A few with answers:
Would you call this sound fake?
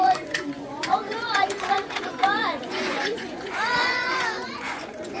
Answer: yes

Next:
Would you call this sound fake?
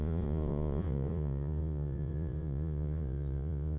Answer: yes